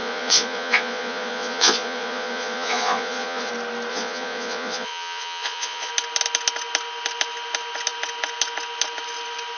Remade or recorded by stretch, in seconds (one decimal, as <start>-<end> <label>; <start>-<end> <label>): 0.0-3.5 remade; 3.5-3.9 recorded; 3.9-5.9 remade; 5.9-9.6 recorded